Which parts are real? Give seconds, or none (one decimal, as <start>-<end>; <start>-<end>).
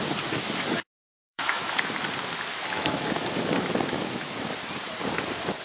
0.0-1.2; 1.8-2.5; 4.4-5.6